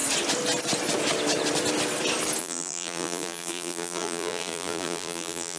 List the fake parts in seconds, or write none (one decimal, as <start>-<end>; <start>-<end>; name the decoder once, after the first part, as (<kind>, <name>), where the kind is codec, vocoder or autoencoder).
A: 2.4-5.6 (vocoder, BigVGAN v2)